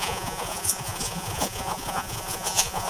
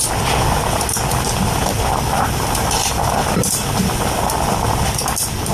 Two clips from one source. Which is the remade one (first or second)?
first